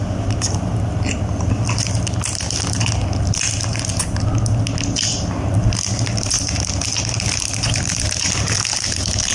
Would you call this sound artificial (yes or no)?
no